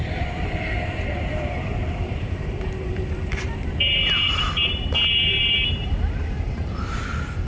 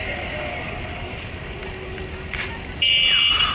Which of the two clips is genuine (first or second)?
second